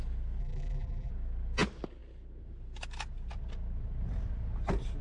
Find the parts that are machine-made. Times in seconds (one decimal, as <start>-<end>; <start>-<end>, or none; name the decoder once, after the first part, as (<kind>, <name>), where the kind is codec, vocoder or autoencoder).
0.4-1.1 (vocoder, BigVGAN v2)